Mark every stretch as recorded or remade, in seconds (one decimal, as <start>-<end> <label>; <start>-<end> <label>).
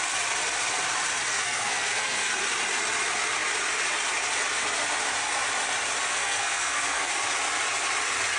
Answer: 0.0-1.3 recorded; 1.3-2.3 remade; 2.3-6.1 recorded; 6.1-7.1 remade; 7.1-8.4 recorded